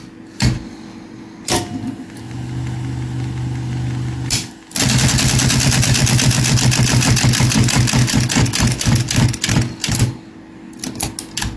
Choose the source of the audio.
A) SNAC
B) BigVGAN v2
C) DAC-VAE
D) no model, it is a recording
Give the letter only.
D